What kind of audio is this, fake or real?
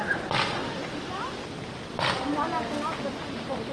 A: real